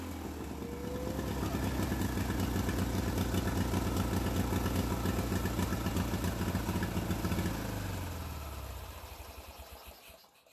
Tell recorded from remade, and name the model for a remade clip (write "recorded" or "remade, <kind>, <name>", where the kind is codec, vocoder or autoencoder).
recorded